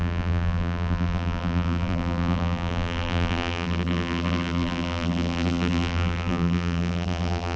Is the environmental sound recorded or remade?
remade